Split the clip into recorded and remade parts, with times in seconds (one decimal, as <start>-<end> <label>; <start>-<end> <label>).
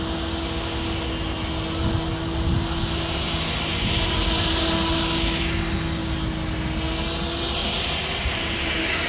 0.0-9.1 recorded